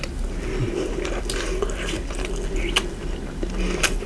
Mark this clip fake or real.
real